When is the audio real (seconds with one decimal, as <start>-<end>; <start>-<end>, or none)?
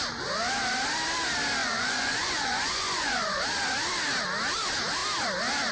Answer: 0.0-1.6; 3.4-5.7